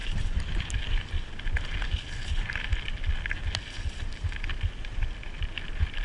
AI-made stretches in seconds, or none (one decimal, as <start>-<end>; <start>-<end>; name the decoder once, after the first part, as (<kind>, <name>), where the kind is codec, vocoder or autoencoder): none